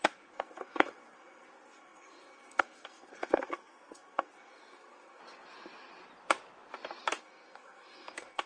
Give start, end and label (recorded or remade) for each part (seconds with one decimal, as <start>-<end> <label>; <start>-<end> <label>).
0.0-5.2 remade; 5.2-7.2 recorded; 7.2-8.5 remade